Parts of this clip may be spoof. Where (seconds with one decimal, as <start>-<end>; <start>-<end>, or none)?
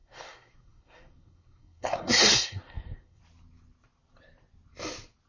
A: 0.0-3.2